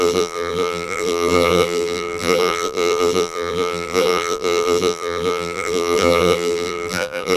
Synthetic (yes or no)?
yes